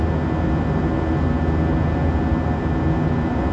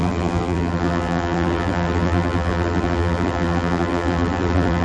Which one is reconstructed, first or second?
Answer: second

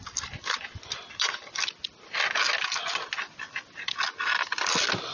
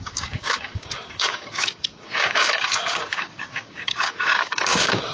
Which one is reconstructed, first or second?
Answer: second